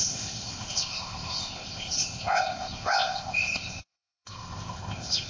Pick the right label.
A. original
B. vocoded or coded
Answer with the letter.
B